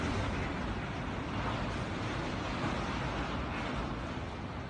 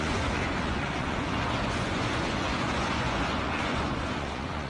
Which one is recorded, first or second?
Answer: first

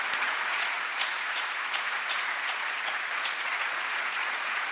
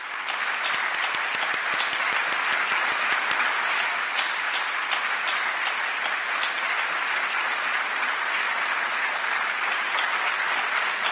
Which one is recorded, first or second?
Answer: second